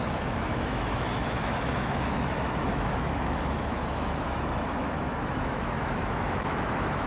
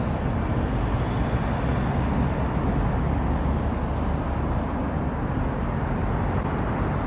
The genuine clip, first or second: second